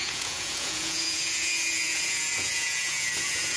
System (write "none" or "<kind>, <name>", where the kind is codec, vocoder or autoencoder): vocoder, Vocos